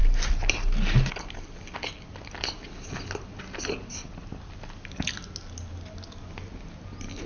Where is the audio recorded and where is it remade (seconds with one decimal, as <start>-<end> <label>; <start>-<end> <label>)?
0.0-7.3 recorded